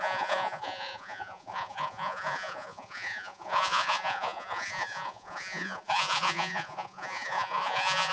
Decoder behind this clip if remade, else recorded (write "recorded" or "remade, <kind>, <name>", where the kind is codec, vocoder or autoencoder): remade, vocoder, Vocos